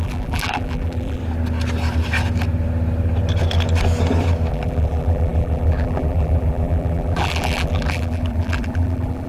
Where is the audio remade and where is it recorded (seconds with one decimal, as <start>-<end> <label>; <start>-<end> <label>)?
0.0-1.2 remade; 1.2-4.5 recorded; 4.5-9.3 remade